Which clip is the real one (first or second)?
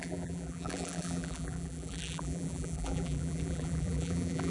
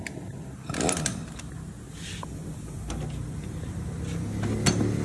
second